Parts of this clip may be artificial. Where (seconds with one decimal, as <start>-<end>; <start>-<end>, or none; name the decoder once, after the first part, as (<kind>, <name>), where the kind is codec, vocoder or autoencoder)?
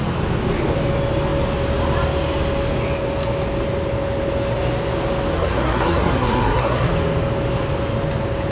5.3-6.9 (codec, SNAC)